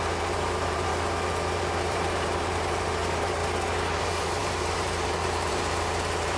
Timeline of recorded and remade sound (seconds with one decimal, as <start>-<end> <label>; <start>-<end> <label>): 0.0-0.9 remade; 0.9-1.6 recorded; 1.6-3.4 remade; 3.4-4.0 recorded; 4.0-6.4 remade